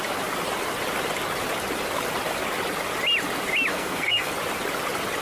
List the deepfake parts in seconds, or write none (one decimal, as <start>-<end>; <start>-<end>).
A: 3.7-4.3